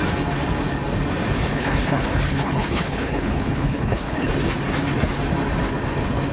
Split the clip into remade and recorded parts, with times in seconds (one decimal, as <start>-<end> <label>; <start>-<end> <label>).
0.0-1.4 recorded; 1.4-4.3 remade; 4.3-6.3 recorded